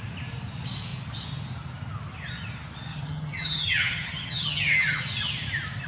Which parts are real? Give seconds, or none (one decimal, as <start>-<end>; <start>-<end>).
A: 0.0-2.9; 5.0-5.9